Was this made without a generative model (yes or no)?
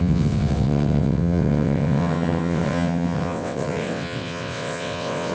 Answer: no